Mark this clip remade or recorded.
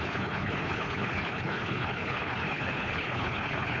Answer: remade